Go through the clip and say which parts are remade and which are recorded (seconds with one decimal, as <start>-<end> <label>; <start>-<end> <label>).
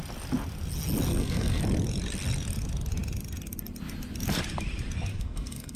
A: 0.0-1.1 recorded; 1.1-1.6 remade; 1.6-5.1 recorded; 5.1-5.8 remade